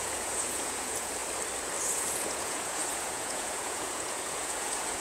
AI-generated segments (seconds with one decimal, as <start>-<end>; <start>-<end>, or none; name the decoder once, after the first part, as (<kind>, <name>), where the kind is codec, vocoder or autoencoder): 0.0-1.2 (vocoder, Vocos); 1.8-5.0